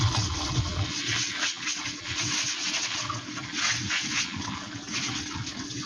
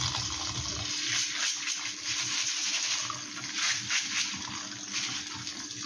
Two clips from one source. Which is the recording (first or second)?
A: second